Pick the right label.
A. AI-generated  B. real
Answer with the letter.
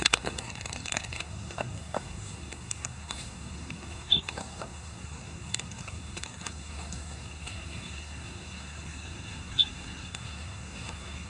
A